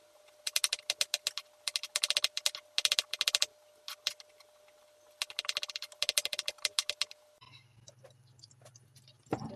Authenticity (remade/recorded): recorded